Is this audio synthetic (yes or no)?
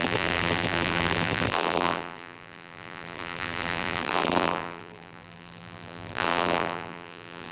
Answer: yes